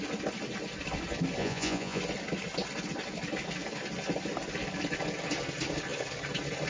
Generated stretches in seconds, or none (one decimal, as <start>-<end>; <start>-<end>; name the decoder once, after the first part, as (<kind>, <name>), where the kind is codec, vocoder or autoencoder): 1.4-2.0 (vocoder, Vocos)